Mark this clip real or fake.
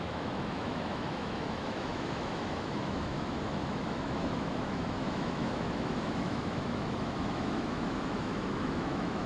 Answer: fake